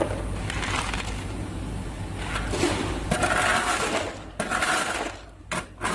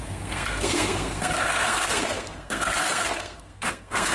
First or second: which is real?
first